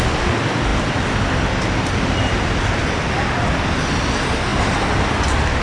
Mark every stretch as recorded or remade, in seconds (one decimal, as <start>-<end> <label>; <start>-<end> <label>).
0.0-5.6 recorded